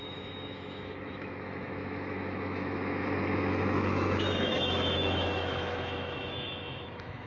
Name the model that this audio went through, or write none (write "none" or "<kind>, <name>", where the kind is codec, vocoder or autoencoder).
autoencoder, DAC-VAE